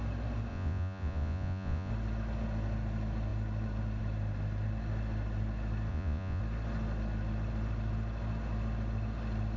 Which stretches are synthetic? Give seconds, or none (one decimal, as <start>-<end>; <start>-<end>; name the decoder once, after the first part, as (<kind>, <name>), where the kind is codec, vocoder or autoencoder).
0.5-1.9 (vocoder, Vocos); 5.9-6.4